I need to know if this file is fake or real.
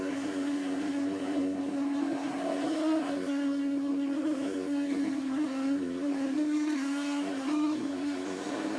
fake